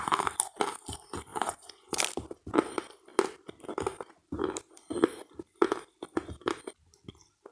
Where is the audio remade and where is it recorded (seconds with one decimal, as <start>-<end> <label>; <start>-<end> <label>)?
0.0-1.3 recorded; 1.3-2.0 remade; 2.0-7.5 recorded